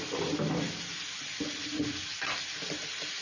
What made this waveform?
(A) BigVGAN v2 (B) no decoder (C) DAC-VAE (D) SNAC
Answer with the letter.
B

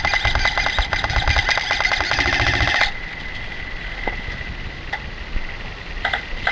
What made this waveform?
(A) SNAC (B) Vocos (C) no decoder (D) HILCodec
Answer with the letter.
C